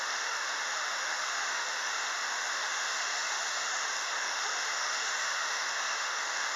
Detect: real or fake fake